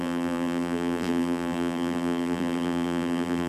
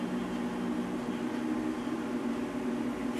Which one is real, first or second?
second